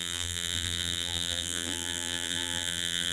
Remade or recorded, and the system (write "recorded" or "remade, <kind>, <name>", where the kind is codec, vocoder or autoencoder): remade, vocoder, BigVGAN v2